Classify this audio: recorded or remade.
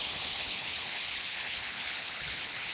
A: remade